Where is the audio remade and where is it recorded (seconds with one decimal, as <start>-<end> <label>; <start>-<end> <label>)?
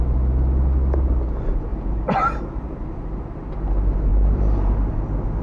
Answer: 0.0-1.7 recorded; 1.7-3.4 remade; 3.4-4.1 recorded; 4.1-4.8 remade; 4.8-5.4 recorded